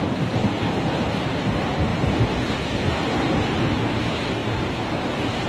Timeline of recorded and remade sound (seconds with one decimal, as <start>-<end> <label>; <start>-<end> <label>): 0.0-1.9 recorded; 1.9-2.6 remade; 2.6-4.4 recorded; 4.4-5.5 remade